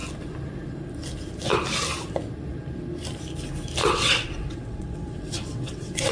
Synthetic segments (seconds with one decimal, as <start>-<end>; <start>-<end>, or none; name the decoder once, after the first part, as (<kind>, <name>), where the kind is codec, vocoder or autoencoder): 3.8-6.1 (vocoder, WaveNeXt)